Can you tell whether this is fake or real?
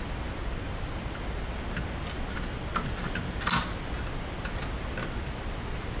real